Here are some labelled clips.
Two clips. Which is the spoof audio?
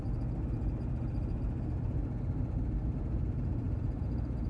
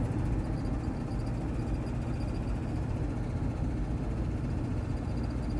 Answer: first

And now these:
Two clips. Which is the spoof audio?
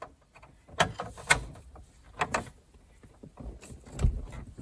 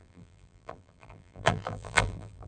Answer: second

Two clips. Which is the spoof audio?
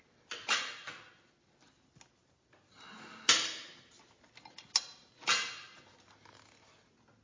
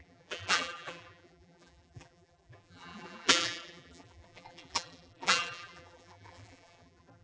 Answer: second